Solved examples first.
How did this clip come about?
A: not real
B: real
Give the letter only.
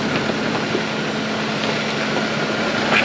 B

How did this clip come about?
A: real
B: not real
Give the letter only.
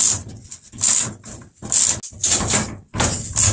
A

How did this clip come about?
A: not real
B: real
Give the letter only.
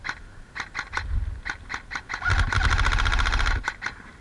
B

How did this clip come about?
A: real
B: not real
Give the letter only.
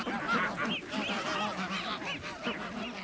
A